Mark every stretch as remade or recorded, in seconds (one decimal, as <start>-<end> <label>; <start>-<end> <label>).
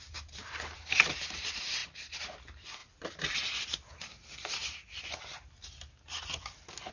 0.0-6.9 recorded